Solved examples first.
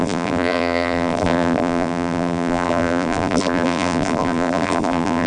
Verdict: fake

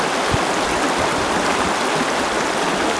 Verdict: real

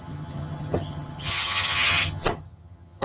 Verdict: fake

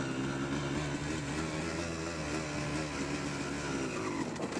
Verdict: real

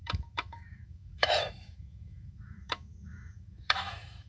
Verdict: fake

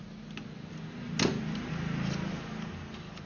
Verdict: real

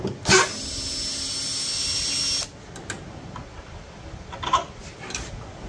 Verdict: real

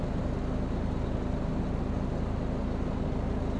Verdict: real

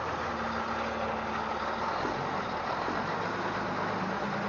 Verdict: real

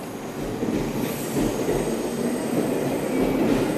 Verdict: real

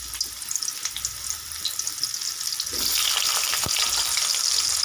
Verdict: real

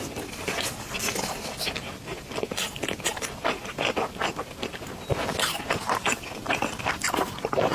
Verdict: real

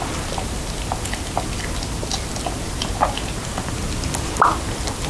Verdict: real